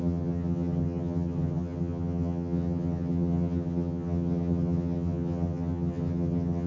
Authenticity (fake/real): fake